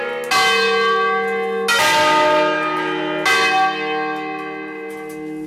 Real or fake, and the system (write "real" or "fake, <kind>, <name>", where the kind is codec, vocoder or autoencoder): real